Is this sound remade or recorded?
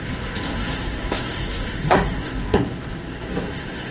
remade